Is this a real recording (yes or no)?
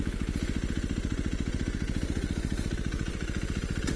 yes